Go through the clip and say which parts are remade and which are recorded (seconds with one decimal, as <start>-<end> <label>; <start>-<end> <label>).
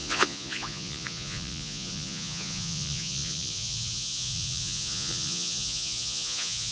0.0-6.7 remade